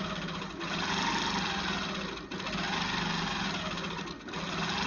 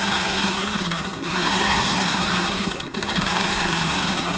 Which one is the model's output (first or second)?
second